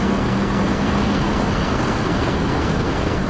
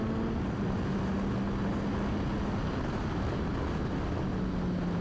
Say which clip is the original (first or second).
second